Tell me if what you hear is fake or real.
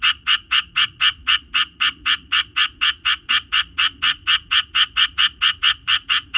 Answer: fake